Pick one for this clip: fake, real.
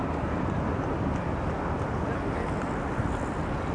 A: real